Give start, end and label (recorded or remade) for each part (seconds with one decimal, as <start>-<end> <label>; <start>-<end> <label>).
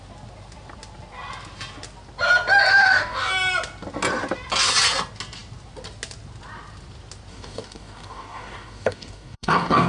0.0-2.7 recorded; 2.7-3.3 remade; 3.3-7.3 recorded; 7.3-9.9 remade